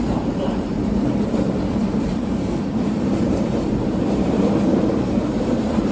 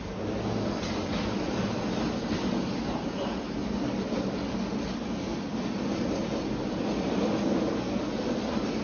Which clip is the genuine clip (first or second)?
second